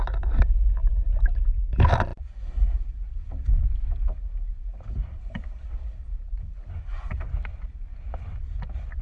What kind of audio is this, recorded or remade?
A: recorded